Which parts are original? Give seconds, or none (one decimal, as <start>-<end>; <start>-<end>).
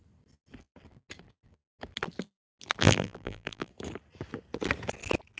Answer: 0.0-2.8; 3.7-5.4